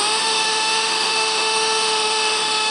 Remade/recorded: remade